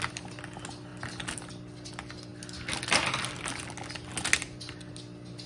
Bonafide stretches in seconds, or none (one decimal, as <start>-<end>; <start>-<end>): 0.0-5.5